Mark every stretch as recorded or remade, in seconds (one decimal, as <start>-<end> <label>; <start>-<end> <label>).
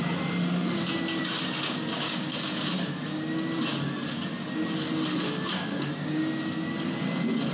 0.0-1.9 recorded; 1.9-2.4 remade; 2.4-7.5 recorded